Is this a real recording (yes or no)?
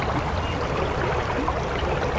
yes